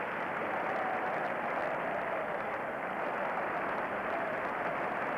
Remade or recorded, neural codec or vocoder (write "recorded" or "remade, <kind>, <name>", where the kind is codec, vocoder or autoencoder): recorded